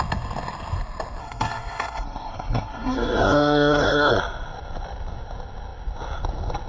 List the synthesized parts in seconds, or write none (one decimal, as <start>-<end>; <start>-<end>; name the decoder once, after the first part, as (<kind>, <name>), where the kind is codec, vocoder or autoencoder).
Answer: 1.2-4.1 (codec, SNAC)